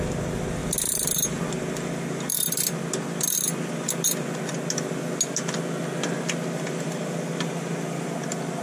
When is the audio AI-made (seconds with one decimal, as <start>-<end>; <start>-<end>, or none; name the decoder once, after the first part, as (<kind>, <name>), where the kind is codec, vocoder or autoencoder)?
none